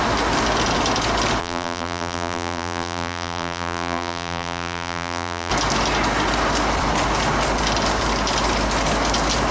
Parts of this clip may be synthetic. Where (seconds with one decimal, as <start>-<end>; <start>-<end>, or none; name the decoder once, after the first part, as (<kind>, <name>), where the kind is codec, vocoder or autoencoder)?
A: 1.4-5.5 (vocoder, BigVGAN v2)